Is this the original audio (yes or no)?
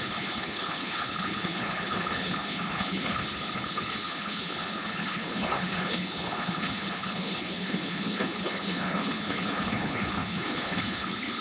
no